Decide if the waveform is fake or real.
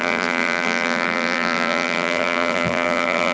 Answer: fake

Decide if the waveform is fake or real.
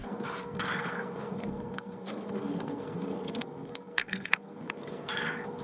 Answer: fake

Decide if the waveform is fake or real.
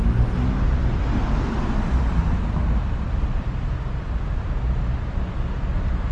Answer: real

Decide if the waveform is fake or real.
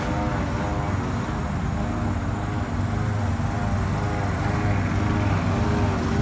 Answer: real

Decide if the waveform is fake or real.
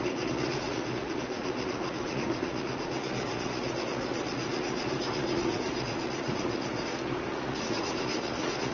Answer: fake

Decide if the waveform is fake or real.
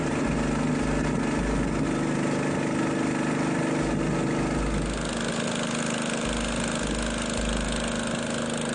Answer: real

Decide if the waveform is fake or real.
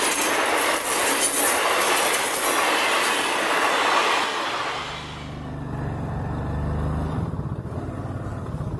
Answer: real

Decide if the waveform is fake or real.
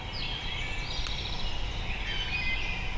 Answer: real